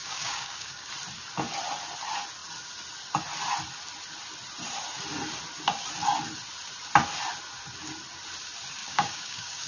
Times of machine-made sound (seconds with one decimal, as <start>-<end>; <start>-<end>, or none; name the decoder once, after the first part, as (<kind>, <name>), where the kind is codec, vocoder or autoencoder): 0.0-0.9 (codec, DAC); 8.8-9.7